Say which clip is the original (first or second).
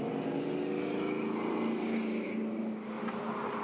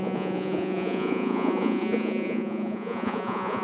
first